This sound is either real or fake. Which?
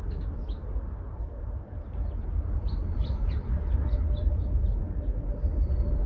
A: real